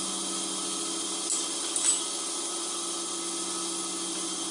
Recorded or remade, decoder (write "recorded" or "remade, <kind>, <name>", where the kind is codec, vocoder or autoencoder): recorded